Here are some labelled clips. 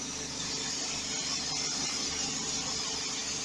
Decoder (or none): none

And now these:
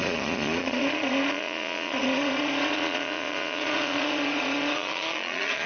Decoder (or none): vocoder, Vocos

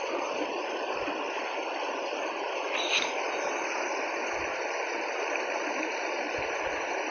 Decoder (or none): none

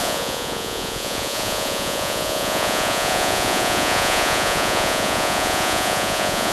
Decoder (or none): vocoder, Vocos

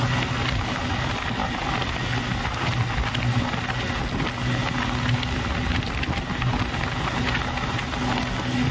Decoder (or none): none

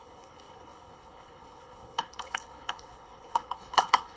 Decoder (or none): codec, HILCodec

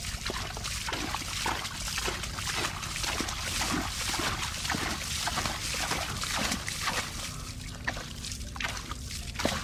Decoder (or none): none